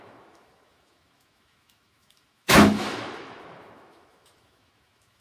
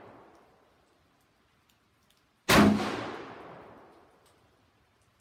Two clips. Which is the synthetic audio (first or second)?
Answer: first